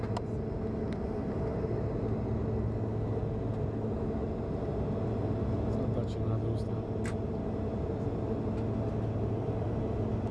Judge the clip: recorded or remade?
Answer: recorded